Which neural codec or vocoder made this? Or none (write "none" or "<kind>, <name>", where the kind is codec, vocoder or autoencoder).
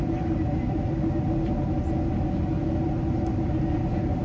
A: none